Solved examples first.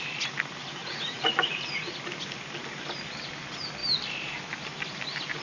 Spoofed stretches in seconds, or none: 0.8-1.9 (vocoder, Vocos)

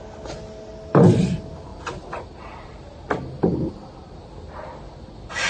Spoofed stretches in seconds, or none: none

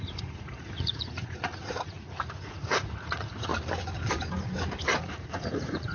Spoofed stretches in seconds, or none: 0.0-3.5 (vocoder, Vocos); 4.9-5.9

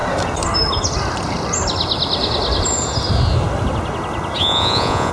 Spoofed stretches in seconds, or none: 4.4-5.1 (vocoder, Vocos)

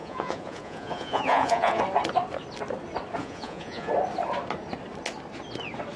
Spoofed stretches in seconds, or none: 0.0-1.8 (vocoder, Vocos); 3.2-3.9